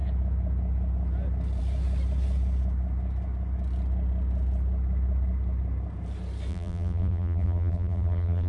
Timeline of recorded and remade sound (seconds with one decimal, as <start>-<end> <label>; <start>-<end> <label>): 0.0-6.5 recorded; 6.5-8.5 remade